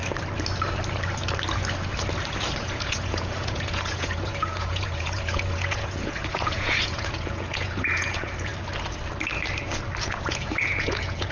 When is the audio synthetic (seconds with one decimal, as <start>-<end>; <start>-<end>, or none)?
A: 2.6-8.5; 10.0-11.3